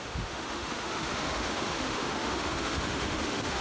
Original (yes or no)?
no